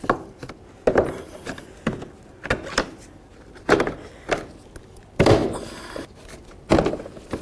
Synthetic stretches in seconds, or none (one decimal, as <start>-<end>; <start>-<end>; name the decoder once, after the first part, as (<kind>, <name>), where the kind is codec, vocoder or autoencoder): none